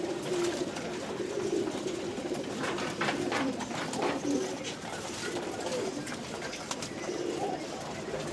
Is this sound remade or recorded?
remade